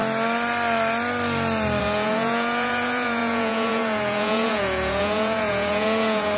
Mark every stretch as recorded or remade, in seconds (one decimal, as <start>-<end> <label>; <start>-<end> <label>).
0.0-1.8 recorded; 1.8-6.4 remade